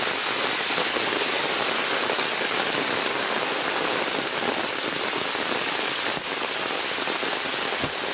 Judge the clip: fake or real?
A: real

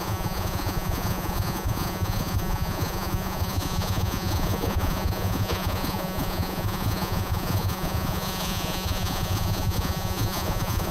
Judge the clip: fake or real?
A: fake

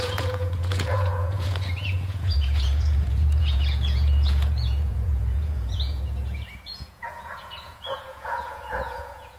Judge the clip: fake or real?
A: fake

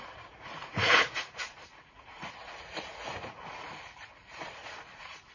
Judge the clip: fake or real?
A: fake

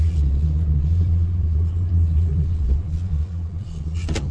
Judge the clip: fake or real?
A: fake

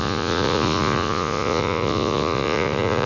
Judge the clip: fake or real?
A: fake